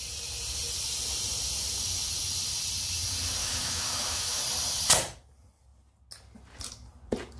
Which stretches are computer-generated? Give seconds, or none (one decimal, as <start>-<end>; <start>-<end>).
3.4-4.4